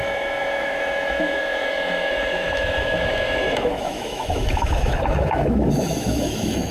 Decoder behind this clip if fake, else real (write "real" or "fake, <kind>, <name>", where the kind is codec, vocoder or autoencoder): fake, autoencoder, DAC-VAE